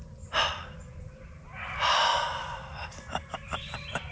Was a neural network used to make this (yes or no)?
no